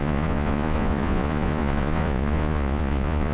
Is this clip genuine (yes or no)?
no